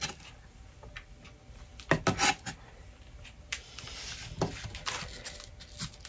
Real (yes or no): yes